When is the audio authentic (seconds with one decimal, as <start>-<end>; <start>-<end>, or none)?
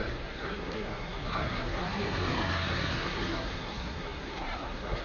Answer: none